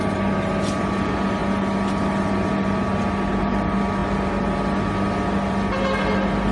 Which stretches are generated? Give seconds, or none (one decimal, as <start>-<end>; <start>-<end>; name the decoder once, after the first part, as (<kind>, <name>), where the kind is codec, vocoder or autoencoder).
none